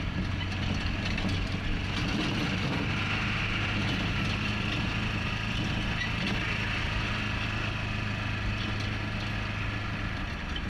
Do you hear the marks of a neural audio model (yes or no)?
no